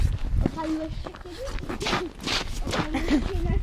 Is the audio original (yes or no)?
yes